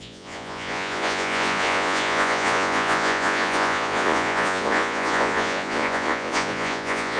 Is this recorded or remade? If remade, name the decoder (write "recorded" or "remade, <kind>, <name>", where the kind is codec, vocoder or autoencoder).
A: remade, vocoder, Vocos